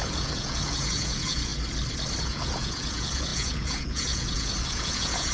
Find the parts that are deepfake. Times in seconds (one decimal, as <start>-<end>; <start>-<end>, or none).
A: 0.0-1.5; 2.2-5.3

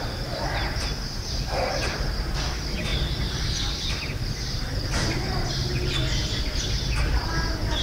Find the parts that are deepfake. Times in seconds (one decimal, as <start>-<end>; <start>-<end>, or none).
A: none

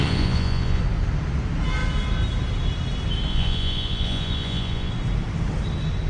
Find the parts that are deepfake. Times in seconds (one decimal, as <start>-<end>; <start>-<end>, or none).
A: 0.0-0.8; 3.3-4.9

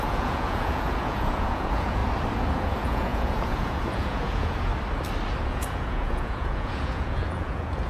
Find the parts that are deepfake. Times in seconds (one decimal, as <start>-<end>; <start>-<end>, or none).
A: 0.0-2.0; 2.5-4.7; 5.4-7.9